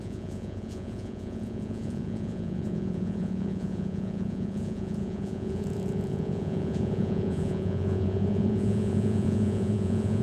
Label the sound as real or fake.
fake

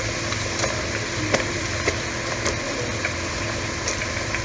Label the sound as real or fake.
real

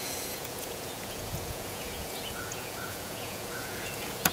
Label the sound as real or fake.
fake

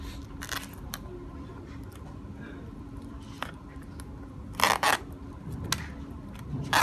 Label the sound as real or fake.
real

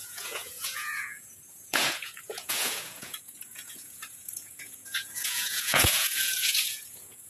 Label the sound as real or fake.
fake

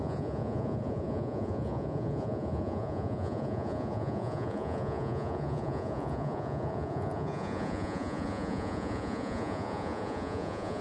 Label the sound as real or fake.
fake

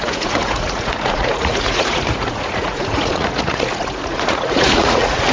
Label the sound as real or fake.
fake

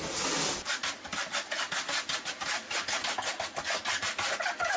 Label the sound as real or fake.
real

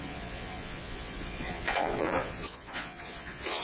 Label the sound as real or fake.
fake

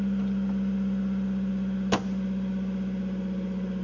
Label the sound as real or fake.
real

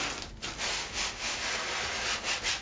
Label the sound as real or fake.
real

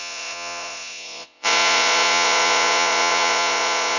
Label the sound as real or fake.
fake